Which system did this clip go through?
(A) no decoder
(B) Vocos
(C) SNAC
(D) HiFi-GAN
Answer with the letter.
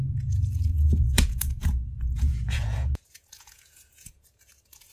B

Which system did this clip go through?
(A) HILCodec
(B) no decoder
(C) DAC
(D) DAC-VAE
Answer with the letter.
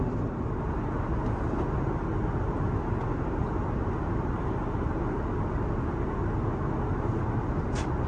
B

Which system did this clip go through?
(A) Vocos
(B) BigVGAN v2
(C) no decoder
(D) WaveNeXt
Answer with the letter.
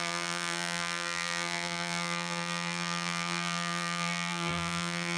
B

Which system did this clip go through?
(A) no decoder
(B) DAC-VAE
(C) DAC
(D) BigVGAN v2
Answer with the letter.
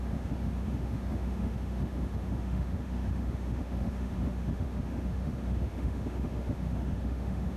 B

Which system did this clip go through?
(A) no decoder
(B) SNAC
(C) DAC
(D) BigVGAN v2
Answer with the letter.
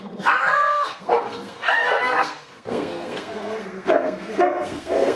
B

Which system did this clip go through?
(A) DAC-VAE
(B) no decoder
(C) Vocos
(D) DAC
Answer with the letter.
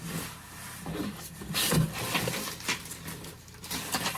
B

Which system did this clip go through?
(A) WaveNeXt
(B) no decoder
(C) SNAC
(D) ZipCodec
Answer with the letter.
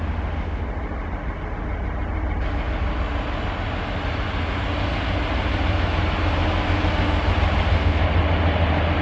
B